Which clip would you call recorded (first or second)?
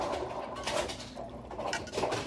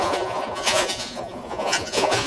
first